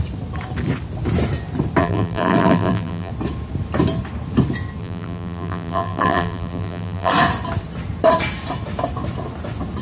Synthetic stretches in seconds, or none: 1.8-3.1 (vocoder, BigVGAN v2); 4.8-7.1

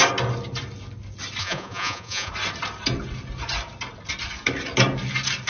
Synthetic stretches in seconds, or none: 1.4-2.3 (vocoder, Vocos)

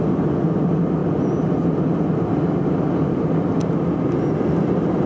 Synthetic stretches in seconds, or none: none